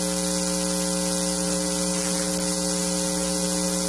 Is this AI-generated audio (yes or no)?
no